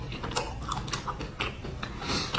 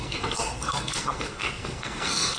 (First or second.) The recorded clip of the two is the first